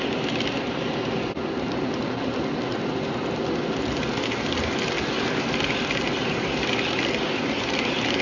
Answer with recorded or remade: recorded